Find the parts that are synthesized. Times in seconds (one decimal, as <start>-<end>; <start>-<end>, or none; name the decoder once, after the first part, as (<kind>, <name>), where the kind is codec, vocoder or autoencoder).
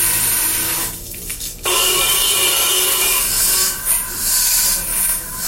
0.6-3.9 (codec, DAC); 4.9-5.5